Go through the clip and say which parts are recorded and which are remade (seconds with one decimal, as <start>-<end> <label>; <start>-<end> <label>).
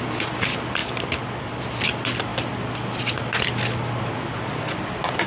0.0-5.3 recorded